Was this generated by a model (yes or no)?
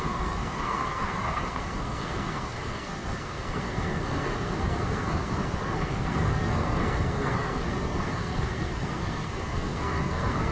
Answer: yes